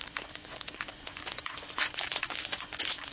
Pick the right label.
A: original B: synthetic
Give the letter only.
B